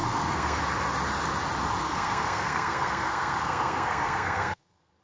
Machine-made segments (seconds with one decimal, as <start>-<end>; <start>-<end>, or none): 0.0-0.6; 1.8-5.0